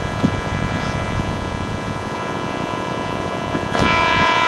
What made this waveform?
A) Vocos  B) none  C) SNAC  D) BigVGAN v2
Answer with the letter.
A